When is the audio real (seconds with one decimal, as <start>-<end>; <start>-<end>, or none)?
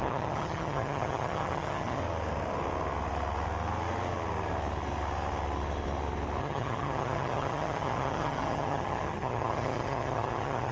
2.0-6.4